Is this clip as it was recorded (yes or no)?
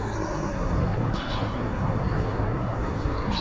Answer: no